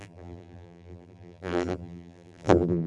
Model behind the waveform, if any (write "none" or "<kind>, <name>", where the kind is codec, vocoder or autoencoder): vocoder, BigVGAN v2